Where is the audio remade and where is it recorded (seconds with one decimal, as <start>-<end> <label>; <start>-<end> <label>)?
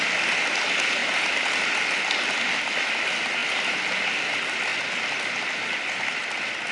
0.0-6.7 recorded